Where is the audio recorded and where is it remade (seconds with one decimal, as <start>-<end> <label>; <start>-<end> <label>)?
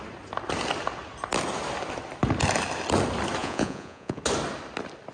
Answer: 0.0-3.4 recorded; 3.4-4.2 remade; 4.2-5.1 recorded